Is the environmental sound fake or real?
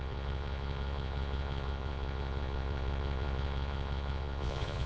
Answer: fake